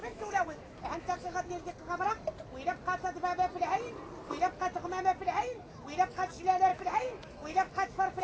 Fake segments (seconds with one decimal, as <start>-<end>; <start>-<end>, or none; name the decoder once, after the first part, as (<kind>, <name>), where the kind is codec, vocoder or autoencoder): 0.0-1.5 (autoencoder, DAC-VAE); 6.7-8.2